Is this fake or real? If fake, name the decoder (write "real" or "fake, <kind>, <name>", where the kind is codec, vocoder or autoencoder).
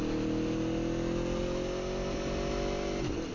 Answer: real